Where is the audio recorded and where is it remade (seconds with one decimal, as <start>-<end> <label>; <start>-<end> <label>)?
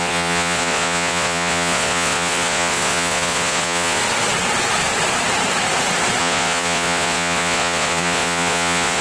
0.0-4.0 remade; 4.0-6.2 recorded; 6.2-9.0 remade